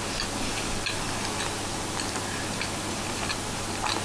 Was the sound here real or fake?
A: real